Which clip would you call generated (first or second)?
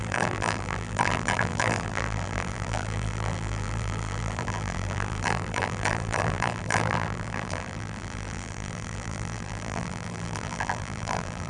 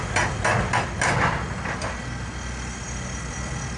first